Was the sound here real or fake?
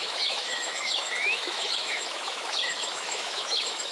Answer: fake